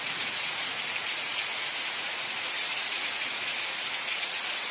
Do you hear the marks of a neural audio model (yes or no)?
yes